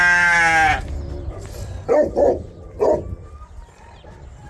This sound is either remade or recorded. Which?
recorded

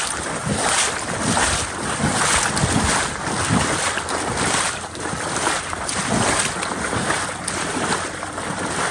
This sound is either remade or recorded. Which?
recorded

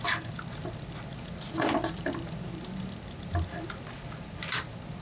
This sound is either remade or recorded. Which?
recorded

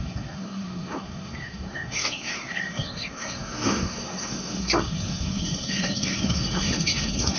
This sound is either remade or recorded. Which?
remade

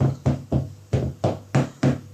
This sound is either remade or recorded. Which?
recorded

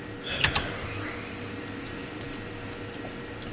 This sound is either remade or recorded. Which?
recorded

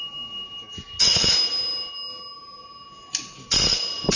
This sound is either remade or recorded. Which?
recorded